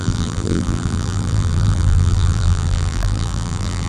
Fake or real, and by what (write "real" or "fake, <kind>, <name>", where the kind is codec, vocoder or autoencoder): fake, vocoder, BigVGAN v2